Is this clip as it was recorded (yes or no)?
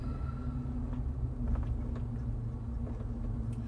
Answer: yes